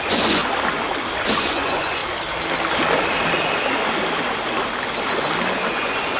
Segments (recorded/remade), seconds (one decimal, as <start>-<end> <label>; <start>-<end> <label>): 0.0-0.4 remade; 0.4-1.4 recorded; 1.4-2.0 remade; 2.0-5.7 recorded; 5.7-6.2 remade